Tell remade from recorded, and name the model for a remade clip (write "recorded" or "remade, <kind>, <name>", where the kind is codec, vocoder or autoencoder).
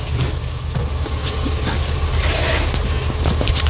recorded